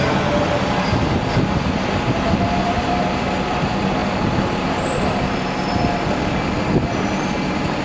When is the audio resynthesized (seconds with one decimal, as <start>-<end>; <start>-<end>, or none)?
none